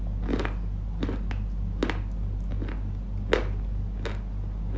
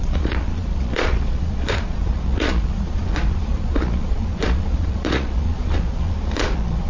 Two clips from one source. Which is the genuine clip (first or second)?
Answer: first